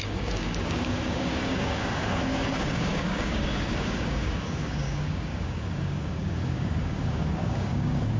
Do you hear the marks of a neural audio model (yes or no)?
yes